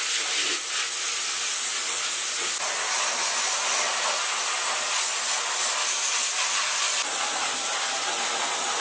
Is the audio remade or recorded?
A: recorded